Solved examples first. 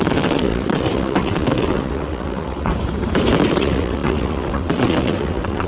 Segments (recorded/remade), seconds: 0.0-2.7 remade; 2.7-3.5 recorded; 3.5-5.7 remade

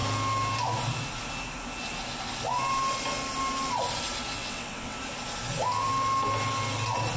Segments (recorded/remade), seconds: 0.0-4.3 recorded; 4.3-5.0 remade; 5.0-7.2 recorded

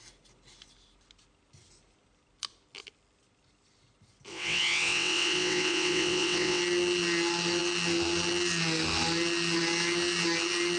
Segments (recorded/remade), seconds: 0.0-4.3 recorded; 4.3-6.6 remade; 6.6-10.8 recorded